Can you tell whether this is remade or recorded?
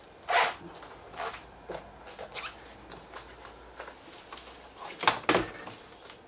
recorded